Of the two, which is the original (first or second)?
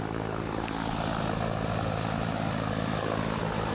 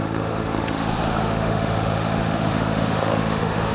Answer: first